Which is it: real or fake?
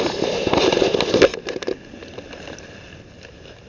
real